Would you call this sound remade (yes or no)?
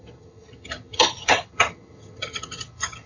yes